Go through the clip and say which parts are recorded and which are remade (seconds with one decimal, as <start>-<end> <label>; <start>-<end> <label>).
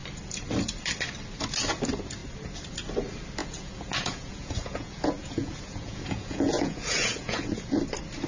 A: 0.0-3.4 recorded; 3.4-7.8 remade; 7.8-8.3 recorded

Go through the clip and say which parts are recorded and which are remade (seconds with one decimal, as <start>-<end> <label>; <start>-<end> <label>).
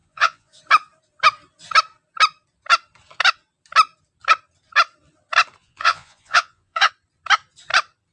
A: 0.0-0.6 remade; 0.6-5.6 recorded; 5.6-6.9 remade; 6.9-8.1 recorded